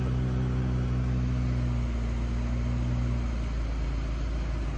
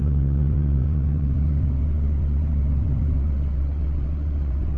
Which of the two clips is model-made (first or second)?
second